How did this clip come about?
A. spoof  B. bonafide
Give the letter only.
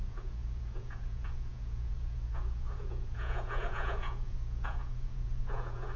A